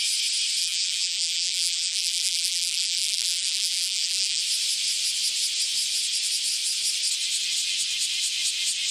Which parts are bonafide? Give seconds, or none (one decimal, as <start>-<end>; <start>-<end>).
0.0-0.6; 4.4-8.9